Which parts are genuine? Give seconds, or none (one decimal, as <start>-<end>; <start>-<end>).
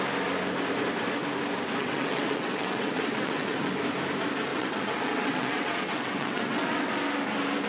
0.0-1.8; 3.7-4.5; 6.9-7.7